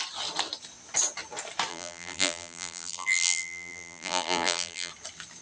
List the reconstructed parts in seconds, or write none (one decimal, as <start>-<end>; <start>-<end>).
1.7-4.9

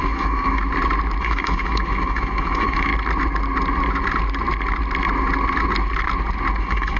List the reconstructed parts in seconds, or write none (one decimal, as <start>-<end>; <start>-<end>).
0.0-0.6; 1.2-2.9; 6.6-7.0